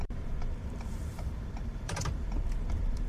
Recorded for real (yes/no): no